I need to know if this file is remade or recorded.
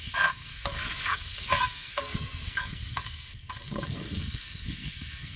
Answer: remade